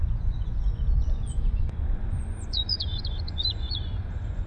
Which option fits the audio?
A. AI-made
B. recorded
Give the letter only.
A